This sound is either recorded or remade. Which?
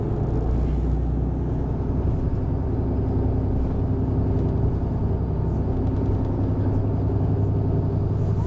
recorded